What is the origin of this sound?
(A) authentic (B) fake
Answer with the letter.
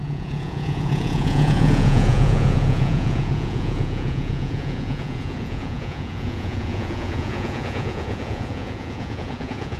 B